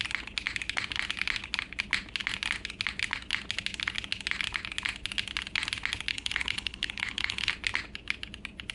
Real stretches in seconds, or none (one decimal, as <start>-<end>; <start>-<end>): 0.0-6.1; 7.5-8.7